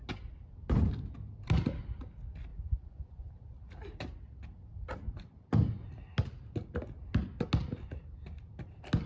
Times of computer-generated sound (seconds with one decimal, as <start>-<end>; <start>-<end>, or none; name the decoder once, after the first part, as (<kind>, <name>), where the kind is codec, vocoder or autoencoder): 2.5-3.3 (vocoder, Vocos)